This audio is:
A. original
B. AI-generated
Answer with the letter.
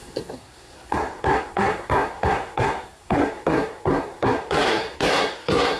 B